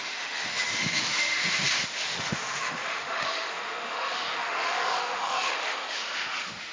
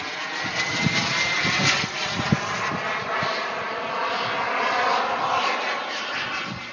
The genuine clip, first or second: second